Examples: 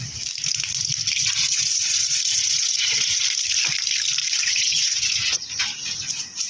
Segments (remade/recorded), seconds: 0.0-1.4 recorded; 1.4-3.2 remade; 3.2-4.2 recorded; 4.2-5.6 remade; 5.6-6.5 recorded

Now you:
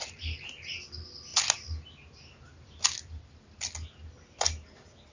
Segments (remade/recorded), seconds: 0.0-5.1 recorded